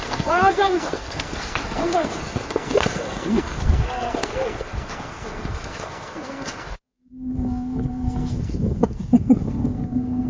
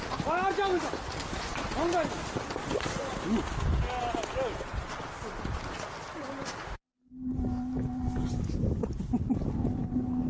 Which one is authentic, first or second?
second